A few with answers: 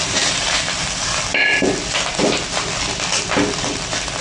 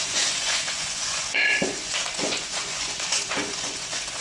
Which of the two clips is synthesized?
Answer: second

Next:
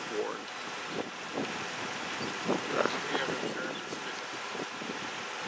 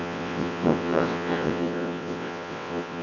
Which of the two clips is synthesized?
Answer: second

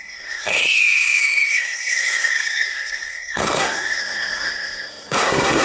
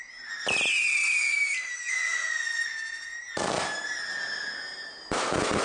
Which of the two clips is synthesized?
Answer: first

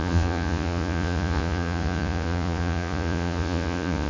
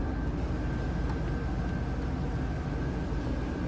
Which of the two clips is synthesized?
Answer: first